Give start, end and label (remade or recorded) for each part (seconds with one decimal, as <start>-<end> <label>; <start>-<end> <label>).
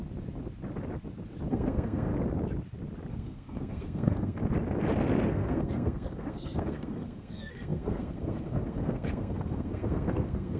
0.0-1.5 recorded; 1.5-2.1 remade; 2.1-3.1 recorded; 3.1-4.4 remade; 4.4-5.3 recorded; 5.3-10.6 remade